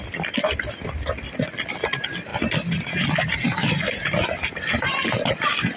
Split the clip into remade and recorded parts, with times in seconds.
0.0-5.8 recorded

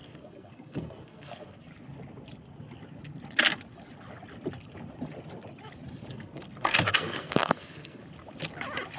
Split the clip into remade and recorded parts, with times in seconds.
0.0-1.7 remade; 1.7-6.1 recorded; 6.1-8.0 remade; 8.0-9.0 recorded

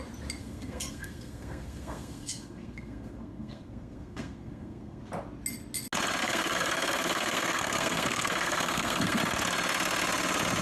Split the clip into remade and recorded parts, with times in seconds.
0.0-0.4 recorded; 0.4-5.0 remade; 5.0-6.2 recorded; 6.2-9.2 remade; 9.2-10.6 recorded

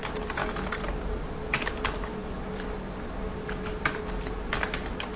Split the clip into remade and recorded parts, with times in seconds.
0.0-5.2 recorded

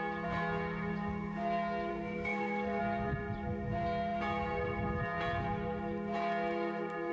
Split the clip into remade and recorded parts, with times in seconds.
0.0-1.9 recorded; 1.9-2.8 remade; 2.8-7.1 recorded

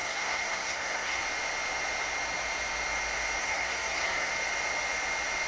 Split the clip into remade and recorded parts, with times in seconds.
0.0-1.2 remade; 1.2-3.4 recorded; 3.4-4.3 remade; 4.3-5.5 recorded